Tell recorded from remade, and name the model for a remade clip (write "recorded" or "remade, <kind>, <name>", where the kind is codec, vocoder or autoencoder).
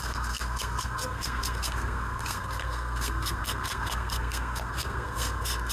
remade, codec, SNAC